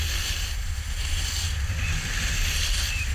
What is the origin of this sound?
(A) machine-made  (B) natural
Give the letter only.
B